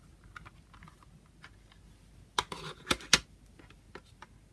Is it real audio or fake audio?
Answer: real